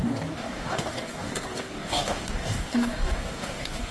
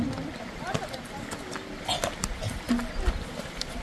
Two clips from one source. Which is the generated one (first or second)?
first